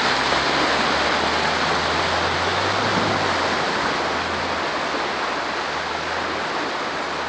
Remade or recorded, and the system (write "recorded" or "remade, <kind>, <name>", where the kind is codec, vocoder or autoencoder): recorded